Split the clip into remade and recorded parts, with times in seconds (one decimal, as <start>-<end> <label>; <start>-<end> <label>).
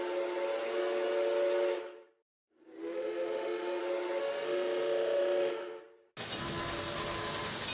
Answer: 0.0-2.8 recorded; 2.8-3.8 remade; 3.8-4.2 recorded; 4.2-5.8 remade; 5.8-7.7 recorded